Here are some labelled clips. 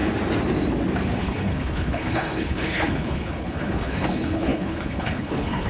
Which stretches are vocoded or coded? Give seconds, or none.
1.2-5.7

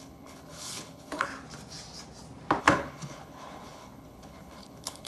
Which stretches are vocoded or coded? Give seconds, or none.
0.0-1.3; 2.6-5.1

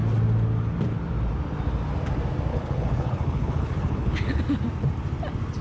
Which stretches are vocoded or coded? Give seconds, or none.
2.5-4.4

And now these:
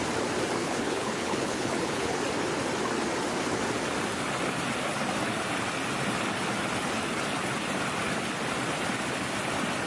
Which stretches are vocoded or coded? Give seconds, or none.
0.6-2.2

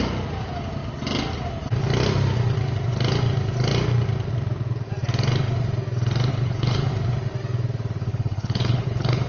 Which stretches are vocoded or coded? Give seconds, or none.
6.3-6.9; 8.1-9.3